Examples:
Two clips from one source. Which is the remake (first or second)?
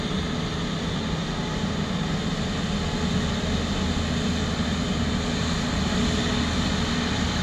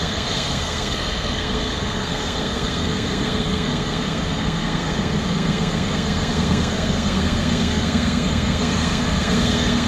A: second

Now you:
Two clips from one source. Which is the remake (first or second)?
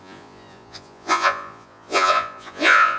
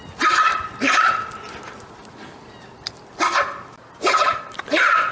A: first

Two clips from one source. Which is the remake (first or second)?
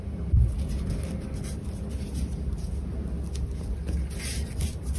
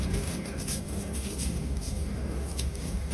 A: second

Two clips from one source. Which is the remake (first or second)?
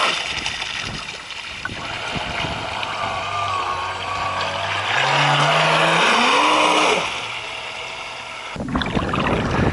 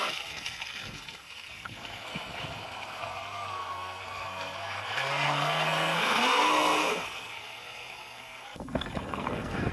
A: second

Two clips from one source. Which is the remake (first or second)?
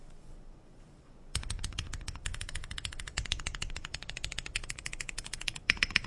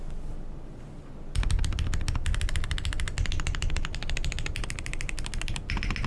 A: first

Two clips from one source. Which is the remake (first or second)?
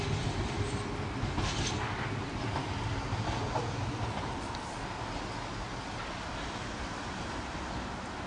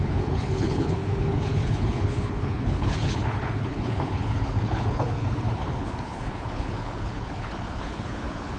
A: second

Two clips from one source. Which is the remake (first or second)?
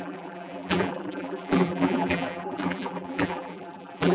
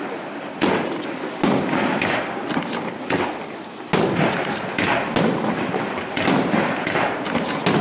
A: first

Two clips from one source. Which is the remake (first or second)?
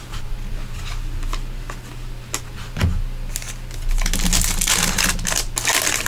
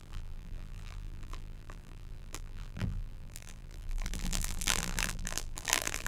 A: second